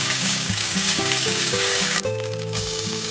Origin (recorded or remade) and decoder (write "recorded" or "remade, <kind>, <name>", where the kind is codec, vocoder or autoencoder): remade, codec, DAC